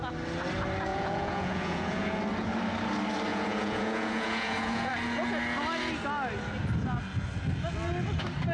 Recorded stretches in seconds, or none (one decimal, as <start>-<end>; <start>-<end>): 0.0-0.9; 2.2-3.3; 4.9-8.5

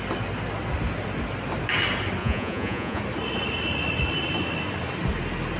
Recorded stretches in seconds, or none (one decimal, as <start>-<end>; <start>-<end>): 0.0-2.2; 3.0-5.6